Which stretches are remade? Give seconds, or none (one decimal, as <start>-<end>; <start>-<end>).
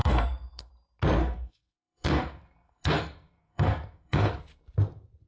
0.0-0.7; 1.2-4.4